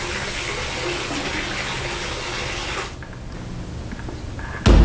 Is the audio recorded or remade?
recorded